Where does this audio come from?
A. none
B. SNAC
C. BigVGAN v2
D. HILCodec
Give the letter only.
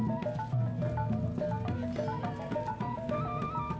A